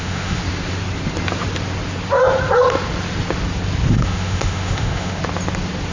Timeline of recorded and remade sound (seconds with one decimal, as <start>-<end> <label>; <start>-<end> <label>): 0.0-0.4 remade; 0.4-3.9 recorded; 3.9-5.2 remade; 5.2-5.9 recorded